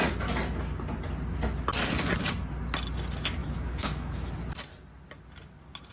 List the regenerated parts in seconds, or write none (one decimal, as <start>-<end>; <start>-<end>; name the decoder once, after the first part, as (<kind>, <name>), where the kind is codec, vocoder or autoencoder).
3.4-4.3 (autoencoder, DAC-VAE)